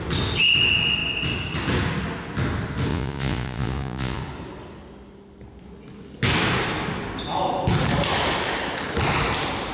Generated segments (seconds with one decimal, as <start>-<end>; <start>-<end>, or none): 2.9-4.2